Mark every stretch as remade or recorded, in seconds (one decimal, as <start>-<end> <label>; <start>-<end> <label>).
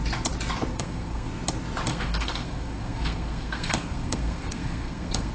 0.0-0.7 recorded; 0.7-1.3 remade; 1.3-1.9 recorded; 1.9-5.3 remade